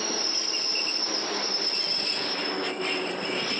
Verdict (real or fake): real